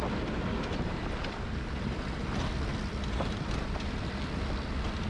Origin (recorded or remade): recorded